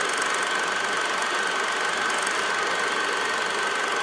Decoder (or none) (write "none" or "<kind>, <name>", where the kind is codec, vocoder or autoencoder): none